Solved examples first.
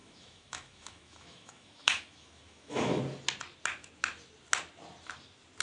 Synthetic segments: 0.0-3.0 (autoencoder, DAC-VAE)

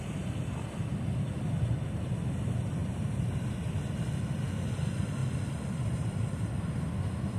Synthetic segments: none

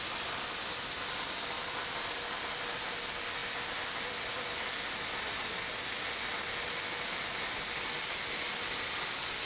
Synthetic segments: none

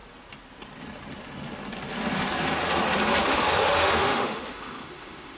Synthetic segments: 3.2-5.4 (autoencoder, DAC-VAE)

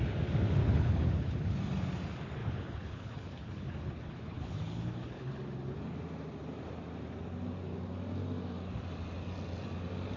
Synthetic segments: 0.6-1.6 (codec, HILCodec); 2.4-5.4

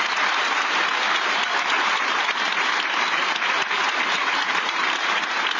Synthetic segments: 0.0-0.6 (vocoder, BigVGAN v2); 1.2-5.6

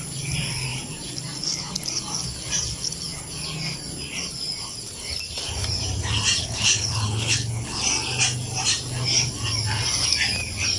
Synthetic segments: 6.4-7.8 (codec, HILCodec)